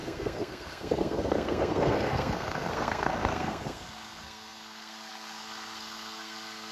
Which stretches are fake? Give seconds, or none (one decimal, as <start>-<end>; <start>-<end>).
0.0-6.7